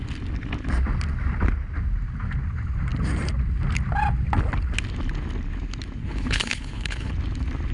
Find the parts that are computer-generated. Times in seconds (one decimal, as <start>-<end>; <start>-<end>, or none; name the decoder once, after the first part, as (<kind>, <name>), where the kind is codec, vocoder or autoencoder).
6.0-7.1 (codec, HILCodec)